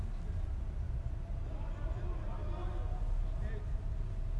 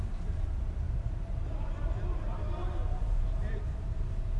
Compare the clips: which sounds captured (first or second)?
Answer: first